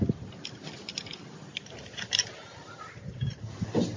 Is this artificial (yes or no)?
no